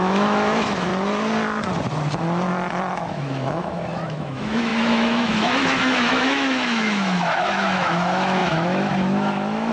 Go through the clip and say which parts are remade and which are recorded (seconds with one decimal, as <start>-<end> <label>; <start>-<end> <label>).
0.0-0.9 remade; 0.9-2.9 recorded; 2.9-9.7 remade